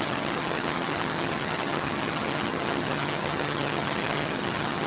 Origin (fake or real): fake